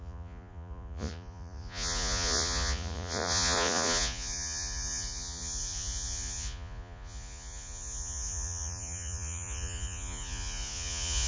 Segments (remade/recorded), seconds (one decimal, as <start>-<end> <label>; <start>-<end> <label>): 0.0-11.3 remade